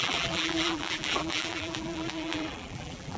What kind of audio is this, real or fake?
fake